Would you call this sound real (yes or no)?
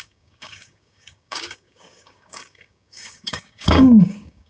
no